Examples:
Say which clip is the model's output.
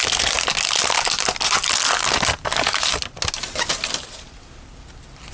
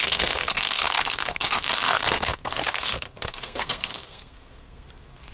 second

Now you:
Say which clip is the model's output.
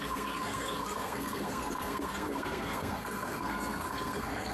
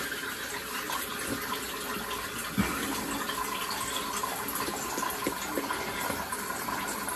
first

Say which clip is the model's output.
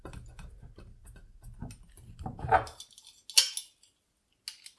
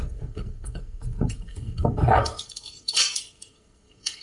second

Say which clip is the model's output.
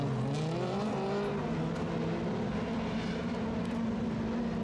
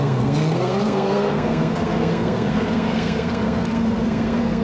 second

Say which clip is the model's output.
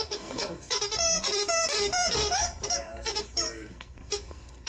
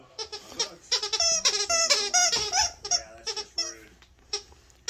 first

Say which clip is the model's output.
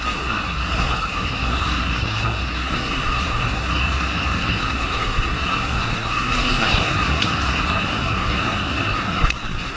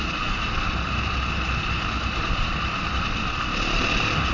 first